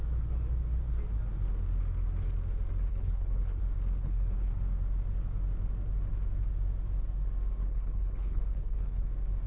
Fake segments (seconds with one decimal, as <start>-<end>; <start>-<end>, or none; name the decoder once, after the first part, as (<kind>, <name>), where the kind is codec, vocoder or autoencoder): 2.9-3.6 (codec, HILCodec); 4.0-4.5; 7.6-9.1